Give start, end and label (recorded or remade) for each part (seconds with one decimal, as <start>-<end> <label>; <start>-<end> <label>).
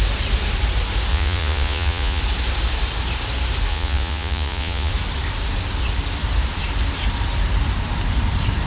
0.0-1.1 recorded; 1.1-2.2 remade; 2.2-3.7 recorded; 3.7-4.9 remade; 4.9-8.7 recorded